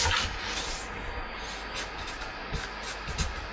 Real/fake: real